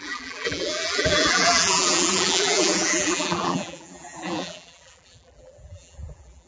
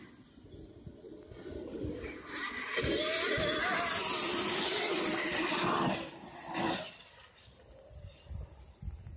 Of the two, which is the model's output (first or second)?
first